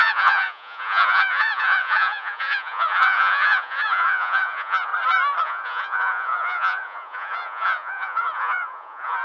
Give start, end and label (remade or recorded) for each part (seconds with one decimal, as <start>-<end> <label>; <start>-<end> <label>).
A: 0.0-4.9 remade; 4.9-5.4 recorded; 5.4-9.2 remade